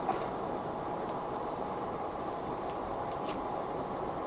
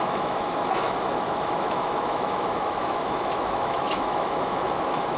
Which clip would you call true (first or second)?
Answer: first